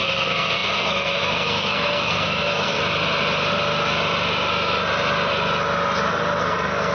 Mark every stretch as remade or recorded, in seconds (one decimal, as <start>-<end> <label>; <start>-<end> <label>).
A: 0.0-2.8 remade; 2.8-6.4 recorded; 6.4-6.9 remade